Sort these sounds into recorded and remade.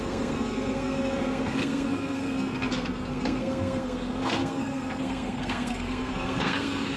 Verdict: remade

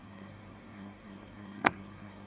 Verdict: remade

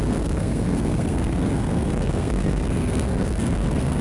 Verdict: remade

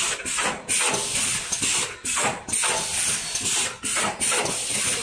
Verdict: recorded